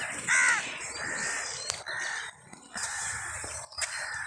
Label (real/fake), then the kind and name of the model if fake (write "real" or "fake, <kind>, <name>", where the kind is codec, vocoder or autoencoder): fake, vocoder, BigVGAN v2